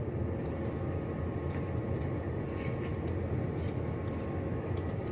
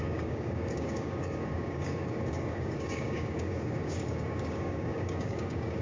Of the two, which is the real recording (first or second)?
first